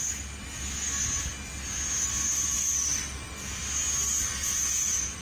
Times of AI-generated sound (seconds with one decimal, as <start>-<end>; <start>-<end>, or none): 4.4-5.2